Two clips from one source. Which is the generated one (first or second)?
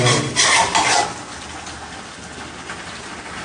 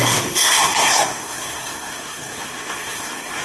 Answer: second